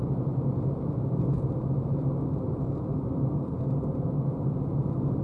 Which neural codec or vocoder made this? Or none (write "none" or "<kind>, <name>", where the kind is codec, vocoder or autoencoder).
none